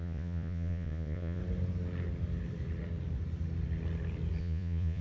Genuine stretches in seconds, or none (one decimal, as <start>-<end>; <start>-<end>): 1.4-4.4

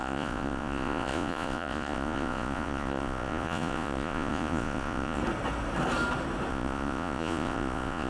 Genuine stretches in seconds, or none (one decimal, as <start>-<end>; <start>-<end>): 5.2-6.5

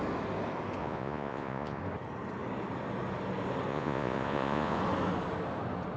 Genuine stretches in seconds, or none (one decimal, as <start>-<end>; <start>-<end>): 0.0-0.8; 1.8-3.7; 4.8-6.0